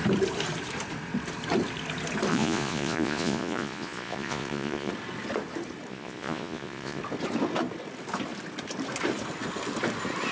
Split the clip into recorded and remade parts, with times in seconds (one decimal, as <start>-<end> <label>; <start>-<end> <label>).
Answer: 0.0-2.3 recorded; 2.3-4.9 remade; 4.9-5.9 recorded; 5.9-7.0 remade; 7.0-10.3 recorded